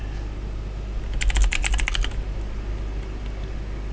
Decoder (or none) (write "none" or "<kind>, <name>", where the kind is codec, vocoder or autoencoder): none